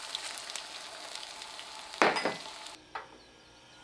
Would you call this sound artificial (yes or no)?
no